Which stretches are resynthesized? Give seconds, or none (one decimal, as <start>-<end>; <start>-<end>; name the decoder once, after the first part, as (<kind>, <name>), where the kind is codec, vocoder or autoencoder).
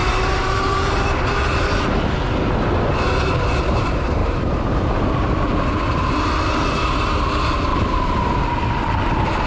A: 0.0-1.0 (vocoder, BigVGAN v2); 4.2-5.0; 7.7-8.4